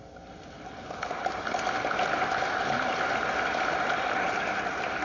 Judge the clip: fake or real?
real